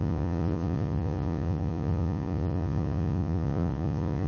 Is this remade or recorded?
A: remade